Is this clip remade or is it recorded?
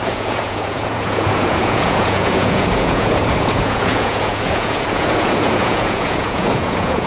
remade